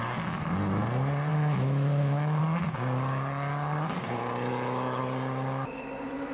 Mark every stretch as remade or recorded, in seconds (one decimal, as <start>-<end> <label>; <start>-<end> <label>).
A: 0.0-1.3 recorded; 1.3-2.4 remade; 2.4-4.5 recorded; 4.5-5.0 remade; 5.0-6.3 recorded